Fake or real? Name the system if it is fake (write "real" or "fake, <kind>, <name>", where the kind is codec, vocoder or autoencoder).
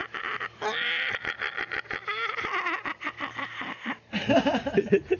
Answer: real